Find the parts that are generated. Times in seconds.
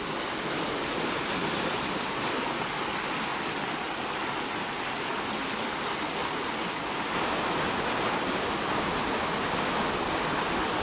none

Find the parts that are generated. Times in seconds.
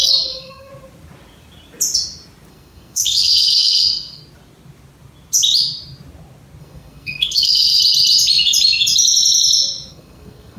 0.0-0.7; 2.5-4.2; 6.6-7.8; 9.9-10.6